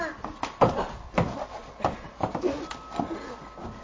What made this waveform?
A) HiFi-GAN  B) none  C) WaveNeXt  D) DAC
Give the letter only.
B